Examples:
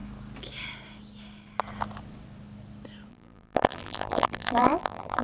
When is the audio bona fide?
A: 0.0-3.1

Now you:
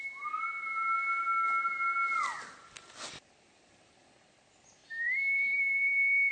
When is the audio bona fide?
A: 0.0-4.8

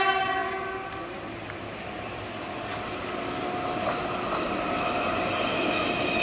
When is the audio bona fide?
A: 0.0-6.2

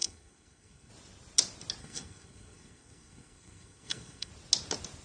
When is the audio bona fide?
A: 0.9-1.8; 4.3-5.0

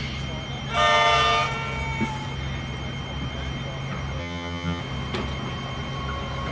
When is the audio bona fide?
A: 0.0-4.2; 4.8-6.5